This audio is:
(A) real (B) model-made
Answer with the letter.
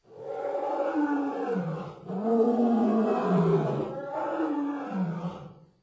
B